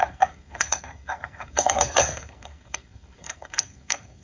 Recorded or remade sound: remade